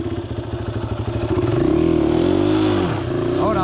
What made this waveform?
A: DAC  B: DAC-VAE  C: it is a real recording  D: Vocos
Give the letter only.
C